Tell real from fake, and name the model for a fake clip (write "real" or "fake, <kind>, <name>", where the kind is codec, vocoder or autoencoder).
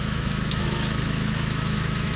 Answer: fake, autoencoder, DAC-VAE